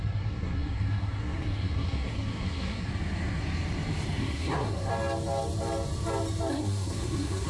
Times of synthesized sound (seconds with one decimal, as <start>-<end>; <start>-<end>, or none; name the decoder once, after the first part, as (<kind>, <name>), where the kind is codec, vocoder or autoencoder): 0.0-2.9 (codec, SNAC); 4.2-4.9; 6.5-7.5